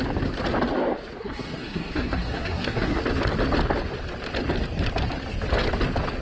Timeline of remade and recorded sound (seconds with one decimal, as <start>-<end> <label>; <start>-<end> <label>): 0.0-1.2 recorded; 1.2-3.0 remade; 3.0-6.2 recorded